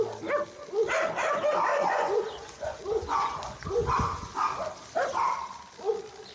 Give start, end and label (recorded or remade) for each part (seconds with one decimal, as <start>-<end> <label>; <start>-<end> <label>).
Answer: 0.0-1.7 recorded; 1.7-4.3 remade; 4.3-6.3 recorded